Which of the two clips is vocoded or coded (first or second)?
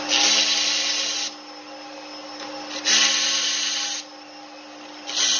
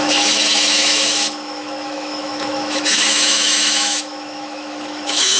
second